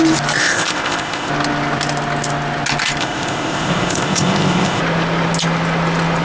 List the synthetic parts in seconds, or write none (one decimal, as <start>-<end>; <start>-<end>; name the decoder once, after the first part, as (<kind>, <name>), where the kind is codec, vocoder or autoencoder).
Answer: 0.4-1.3 (codec, ZipCodec); 3.0-4.8